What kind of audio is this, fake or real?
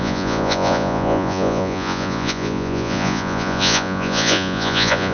fake